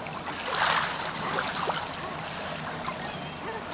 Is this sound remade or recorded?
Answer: recorded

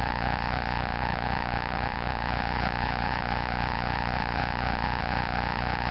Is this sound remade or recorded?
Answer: remade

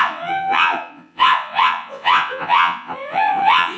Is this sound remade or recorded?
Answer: remade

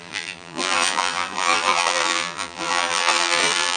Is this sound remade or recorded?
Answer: remade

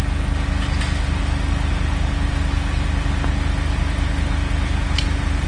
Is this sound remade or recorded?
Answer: recorded